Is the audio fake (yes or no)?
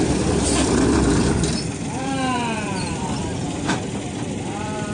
yes